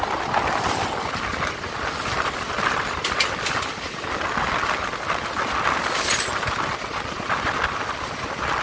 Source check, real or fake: real